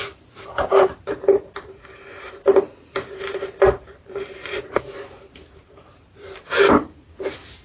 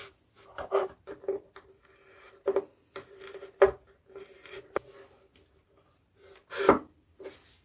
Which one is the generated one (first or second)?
first